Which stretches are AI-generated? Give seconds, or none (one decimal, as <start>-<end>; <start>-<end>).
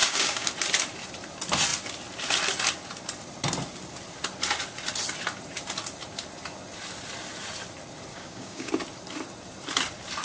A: 0.0-0.5; 8.1-8.7